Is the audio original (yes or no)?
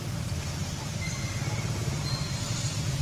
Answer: yes